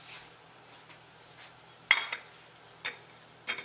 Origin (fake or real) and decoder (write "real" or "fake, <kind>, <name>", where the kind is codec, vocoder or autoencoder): real